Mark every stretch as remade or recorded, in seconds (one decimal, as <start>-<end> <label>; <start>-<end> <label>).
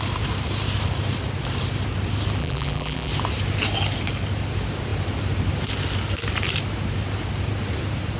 0.0-2.4 recorded; 2.4-3.1 remade; 3.1-8.2 recorded